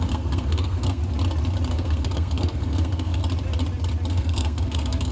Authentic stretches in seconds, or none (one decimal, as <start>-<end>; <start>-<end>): 1.0-1.7; 3.2-4.1